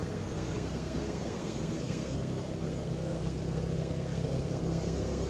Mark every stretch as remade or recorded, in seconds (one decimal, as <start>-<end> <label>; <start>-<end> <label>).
0.0-5.3 remade